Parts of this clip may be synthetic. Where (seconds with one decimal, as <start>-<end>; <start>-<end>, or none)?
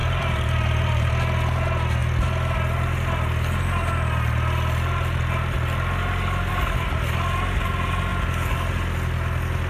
0.0-1.1